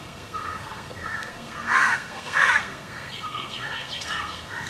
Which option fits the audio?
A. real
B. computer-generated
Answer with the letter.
B